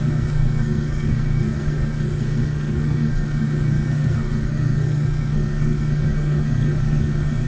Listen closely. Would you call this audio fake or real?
fake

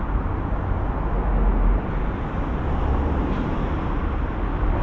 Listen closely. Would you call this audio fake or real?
real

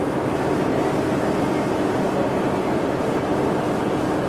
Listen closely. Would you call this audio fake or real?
real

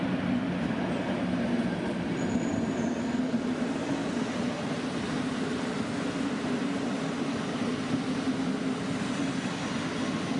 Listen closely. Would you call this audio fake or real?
real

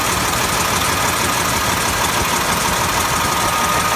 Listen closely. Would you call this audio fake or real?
real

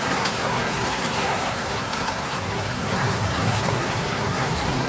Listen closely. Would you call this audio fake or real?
fake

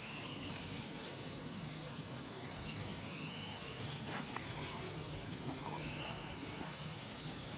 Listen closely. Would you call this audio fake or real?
fake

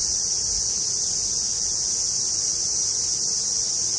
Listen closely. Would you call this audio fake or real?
real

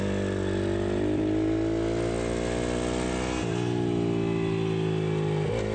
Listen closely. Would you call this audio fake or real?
real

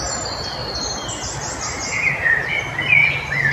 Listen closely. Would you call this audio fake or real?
real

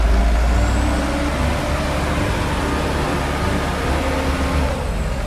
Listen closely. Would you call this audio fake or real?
real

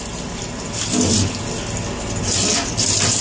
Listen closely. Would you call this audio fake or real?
real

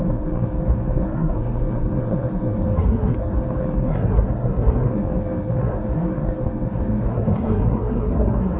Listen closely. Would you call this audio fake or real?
fake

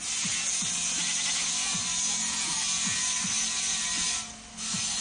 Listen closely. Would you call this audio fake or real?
real